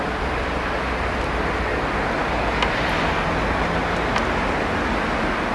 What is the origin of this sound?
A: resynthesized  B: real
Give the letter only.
B